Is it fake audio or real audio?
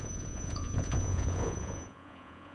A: fake